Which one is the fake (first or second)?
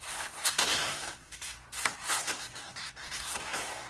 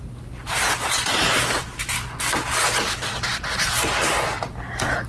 first